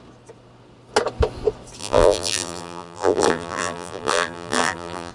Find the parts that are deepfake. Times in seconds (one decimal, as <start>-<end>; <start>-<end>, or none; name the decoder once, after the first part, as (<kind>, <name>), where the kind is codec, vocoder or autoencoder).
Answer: 1.8-5.1 (vocoder, BigVGAN v2)